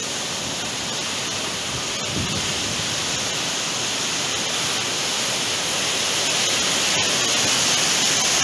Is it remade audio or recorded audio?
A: recorded